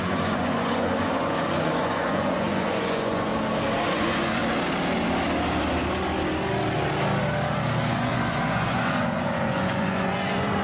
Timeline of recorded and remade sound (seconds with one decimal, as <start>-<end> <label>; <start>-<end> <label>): 0.0-3.3 remade; 3.3-3.9 recorded; 3.9-4.4 remade; 4.4-7.9 recorded; 7.9-10.6 remade